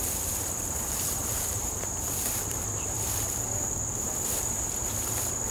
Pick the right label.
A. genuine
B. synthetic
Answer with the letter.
B